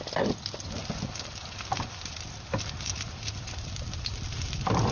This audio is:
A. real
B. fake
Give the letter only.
A